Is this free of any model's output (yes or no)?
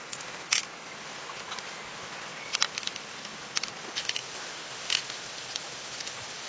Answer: yes